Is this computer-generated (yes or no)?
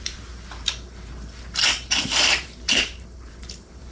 yes